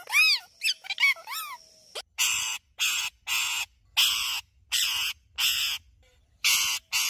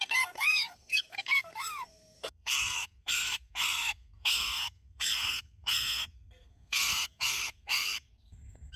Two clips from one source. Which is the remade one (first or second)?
second